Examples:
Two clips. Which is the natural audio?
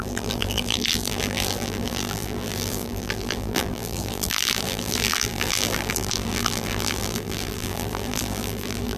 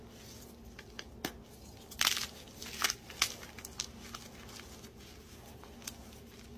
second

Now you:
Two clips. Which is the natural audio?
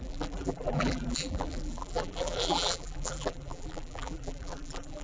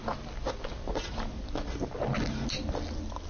second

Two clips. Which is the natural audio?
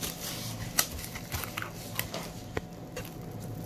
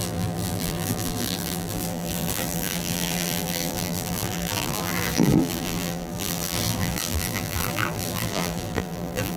first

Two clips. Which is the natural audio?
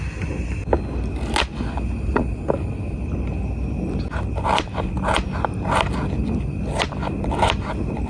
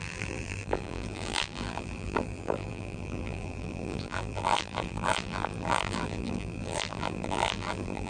first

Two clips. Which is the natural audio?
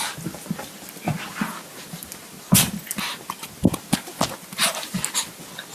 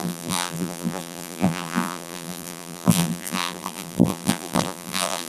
first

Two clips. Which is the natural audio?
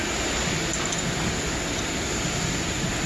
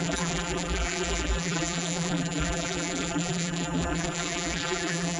first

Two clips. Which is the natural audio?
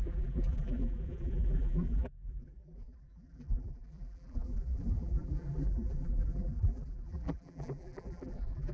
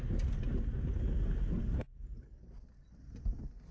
second